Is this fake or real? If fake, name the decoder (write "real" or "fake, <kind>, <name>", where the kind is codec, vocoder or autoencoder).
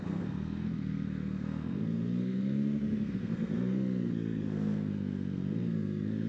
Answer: fake, codec, SNAC